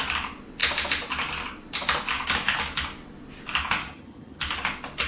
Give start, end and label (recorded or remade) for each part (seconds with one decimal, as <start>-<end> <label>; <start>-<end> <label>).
0.0-3.8 recorded; 3.8-4.4 remade; 4.4-5.1 recorded